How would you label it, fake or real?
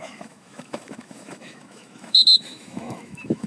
fake